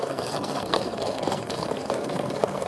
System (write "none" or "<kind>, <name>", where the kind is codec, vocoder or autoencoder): codec, SNAC